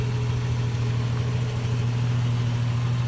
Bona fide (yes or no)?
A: yes